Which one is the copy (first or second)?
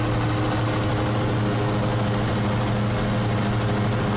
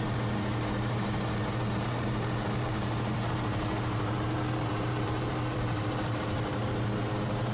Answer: second